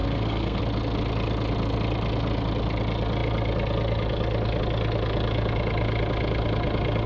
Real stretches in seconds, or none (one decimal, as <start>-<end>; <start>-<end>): 0.6-7.1